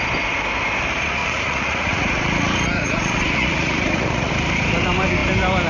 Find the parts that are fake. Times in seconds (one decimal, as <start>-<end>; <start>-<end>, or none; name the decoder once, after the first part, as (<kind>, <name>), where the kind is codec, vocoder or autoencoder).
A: 1.2-4.3 (vocoder, Vocos)